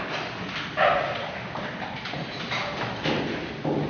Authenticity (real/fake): real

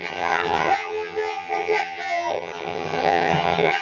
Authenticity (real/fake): fake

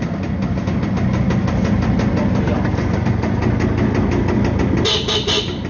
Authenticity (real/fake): real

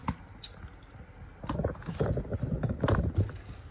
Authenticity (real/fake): real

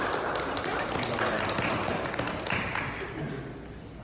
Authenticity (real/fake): real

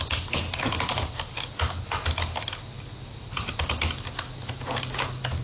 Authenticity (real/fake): real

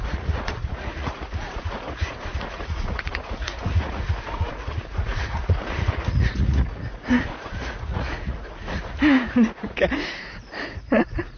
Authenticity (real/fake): fake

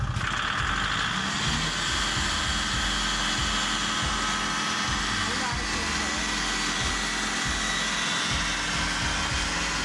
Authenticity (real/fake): real